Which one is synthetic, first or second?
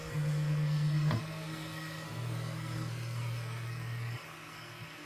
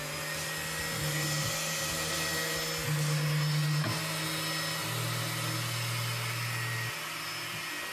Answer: first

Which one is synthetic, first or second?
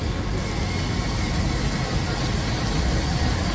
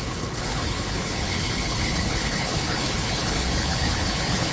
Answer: second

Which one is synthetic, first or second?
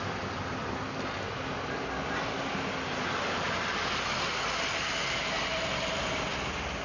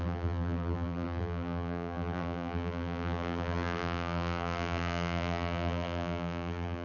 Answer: second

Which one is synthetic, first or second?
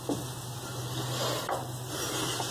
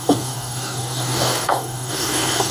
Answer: second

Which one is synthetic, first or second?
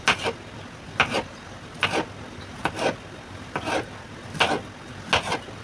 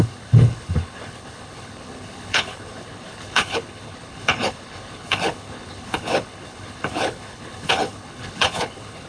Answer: second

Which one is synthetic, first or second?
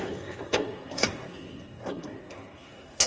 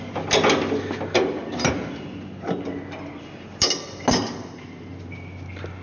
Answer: first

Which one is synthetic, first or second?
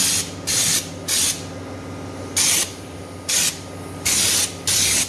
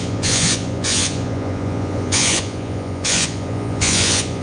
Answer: second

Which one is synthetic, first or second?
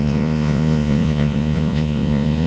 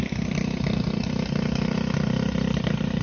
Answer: first